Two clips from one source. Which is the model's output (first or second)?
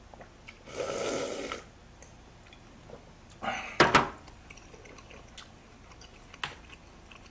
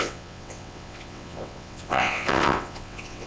second